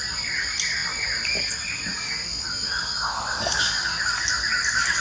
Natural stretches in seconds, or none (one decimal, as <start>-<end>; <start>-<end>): 0.0-1.9; 4.0-5.0